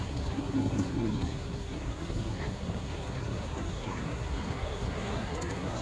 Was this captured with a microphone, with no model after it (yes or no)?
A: no